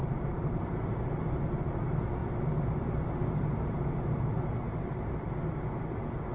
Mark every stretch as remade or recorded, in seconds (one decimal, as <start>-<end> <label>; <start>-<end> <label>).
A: 0.0-6.3 recorded